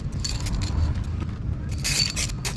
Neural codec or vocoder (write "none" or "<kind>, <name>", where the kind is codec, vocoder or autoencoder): vocoder, BigVGAN v2